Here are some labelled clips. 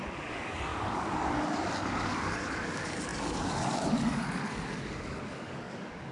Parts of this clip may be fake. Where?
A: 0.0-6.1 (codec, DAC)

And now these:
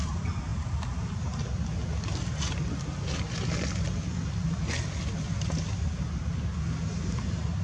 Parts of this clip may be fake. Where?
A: none

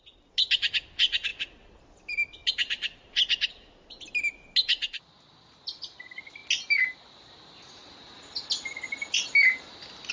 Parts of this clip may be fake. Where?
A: none

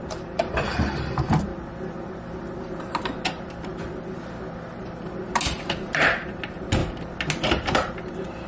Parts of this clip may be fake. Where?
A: 0.0-1.5 (vocoder, BigVGAN v2); 2.7-3.7; 4.7-6.8; 8.1-8.5

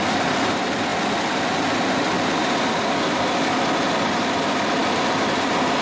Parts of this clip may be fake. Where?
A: 0.9-2.7 (vocoder, BigVGAN v2)

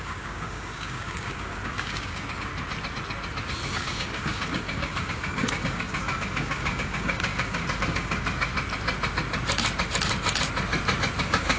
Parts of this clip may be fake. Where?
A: 0.0-2.5 (codec, DAC); 3.7-8.5; 11.2-11.6

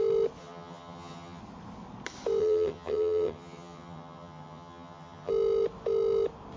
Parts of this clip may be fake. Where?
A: 0.4-1.4 (vocoder, HiFi-GAN); 2.4-5.3